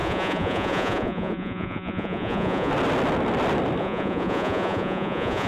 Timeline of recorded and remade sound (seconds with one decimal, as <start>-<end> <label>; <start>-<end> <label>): 0.0-2.7 remade; 2.7-3.8 recorded; 3.8-5.5 remade